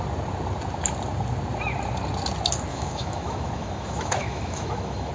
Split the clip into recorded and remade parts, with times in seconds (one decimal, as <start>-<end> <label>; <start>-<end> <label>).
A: 0.0-2.7 recorded; 2.7-5.1 remade